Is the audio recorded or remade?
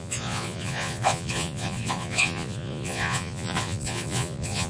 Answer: remade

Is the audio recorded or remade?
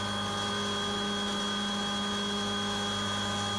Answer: recorded